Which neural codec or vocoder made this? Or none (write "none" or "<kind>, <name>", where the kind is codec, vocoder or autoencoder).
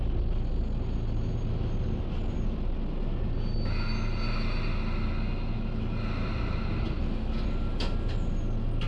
none